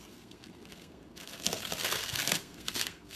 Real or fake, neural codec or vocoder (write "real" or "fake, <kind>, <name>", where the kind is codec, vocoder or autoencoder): fake, codec, SNAC